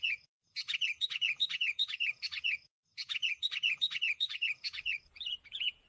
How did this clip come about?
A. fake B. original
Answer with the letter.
A